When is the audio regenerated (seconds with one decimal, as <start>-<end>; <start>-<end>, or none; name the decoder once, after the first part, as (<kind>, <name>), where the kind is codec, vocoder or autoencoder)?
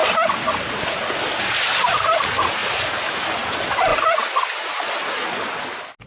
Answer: none